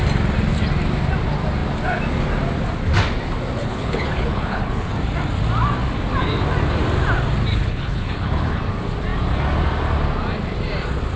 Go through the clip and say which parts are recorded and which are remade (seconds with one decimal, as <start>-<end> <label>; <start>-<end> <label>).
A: 0.0-3.6 recorded; 3.6-4.9 remade; 4.9-7.5 recorded; 7.5-8.6 remade; 8.6-11.2 recorded